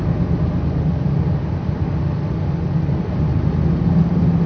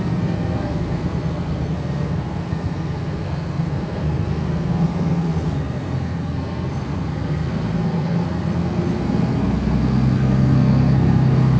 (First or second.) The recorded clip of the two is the first